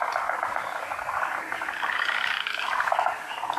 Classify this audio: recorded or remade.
remade